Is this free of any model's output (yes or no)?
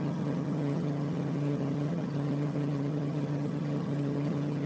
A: no